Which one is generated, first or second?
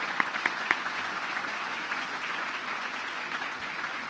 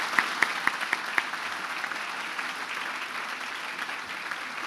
first